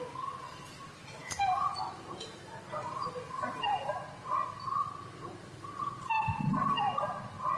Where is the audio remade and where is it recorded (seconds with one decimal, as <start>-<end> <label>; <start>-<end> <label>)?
0.0-7.6 recorded